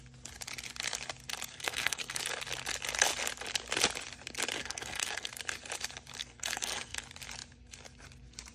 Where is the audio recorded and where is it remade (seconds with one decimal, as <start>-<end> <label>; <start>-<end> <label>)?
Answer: 0.0-1.5 recorded; 1.5-2.2 remade; 2.2-4.6 recorded; 4.6-5.3 remade; 5.3-6.2 recorded; 6.2-7.0 remade; 7.0-8.5 recorded